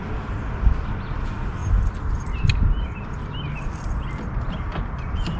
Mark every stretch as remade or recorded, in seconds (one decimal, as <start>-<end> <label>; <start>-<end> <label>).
0.0-5.4 recorded